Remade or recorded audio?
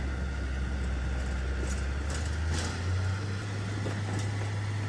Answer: recorded